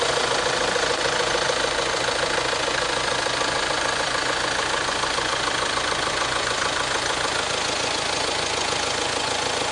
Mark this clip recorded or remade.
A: remade